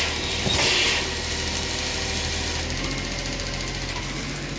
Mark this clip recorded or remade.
recorded